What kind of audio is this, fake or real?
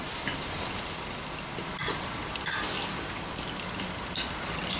real